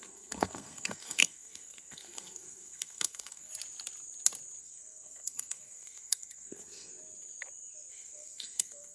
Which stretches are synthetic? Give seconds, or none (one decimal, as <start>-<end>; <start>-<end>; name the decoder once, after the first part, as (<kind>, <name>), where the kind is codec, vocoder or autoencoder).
0.0-3.5 (codec, SNAC); 4.6-6.9; 7.9-8.9